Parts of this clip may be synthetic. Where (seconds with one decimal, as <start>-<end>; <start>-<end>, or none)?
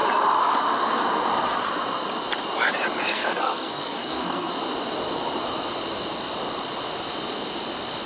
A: 3.1-4.5